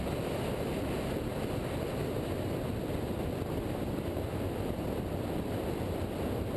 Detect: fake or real real